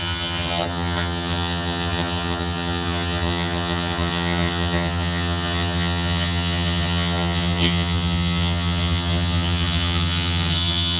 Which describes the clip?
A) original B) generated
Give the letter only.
B